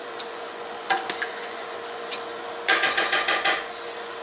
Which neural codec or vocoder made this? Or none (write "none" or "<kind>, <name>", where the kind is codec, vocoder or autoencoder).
vocoder, Vocos